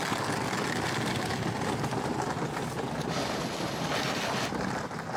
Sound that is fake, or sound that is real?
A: real